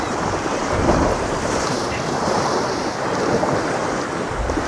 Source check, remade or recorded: remade